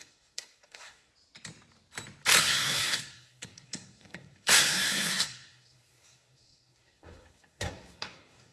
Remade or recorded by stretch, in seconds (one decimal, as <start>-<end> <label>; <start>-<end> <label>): 0.0-1.1 remade; 1.1-2.4 recorded; 2.4-8.5 remade